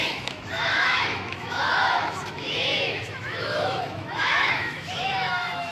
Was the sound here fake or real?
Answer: fake